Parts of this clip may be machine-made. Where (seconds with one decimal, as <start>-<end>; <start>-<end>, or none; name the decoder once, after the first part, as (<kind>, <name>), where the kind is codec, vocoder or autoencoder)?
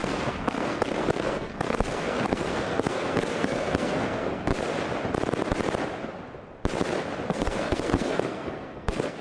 0.0-4.5 (codec, SNAC); 7.3-9.2